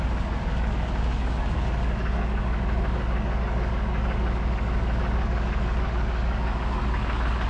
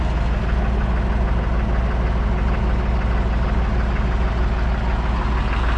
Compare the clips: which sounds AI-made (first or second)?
first